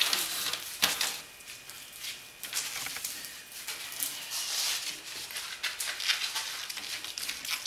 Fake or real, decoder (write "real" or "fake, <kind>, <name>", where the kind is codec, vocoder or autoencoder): real